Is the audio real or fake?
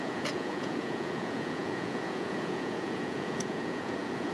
fake